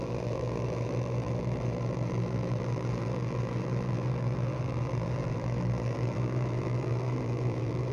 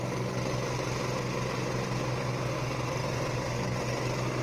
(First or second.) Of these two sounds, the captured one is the second